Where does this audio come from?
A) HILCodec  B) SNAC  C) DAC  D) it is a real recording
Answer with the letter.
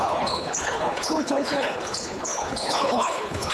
A